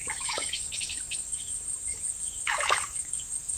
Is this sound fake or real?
fake